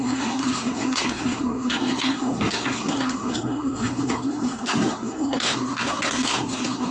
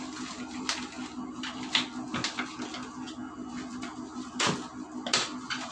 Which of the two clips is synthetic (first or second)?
first